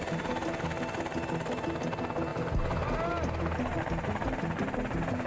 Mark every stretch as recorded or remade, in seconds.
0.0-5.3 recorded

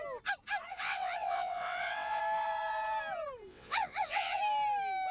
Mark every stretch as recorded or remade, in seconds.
0.0-0.7 recorded; 0.7-2.2 remade; 2.2-3.5 recorded; 3.5-4.4 remade; 4.4-5.1 recorded